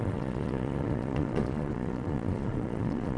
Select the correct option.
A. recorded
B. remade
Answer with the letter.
B